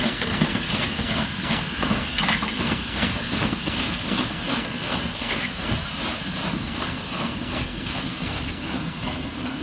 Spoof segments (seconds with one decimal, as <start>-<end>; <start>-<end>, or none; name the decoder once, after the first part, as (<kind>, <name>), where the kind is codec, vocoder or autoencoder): 0.0-5.8 (codec, SNAC); 6.5-9.6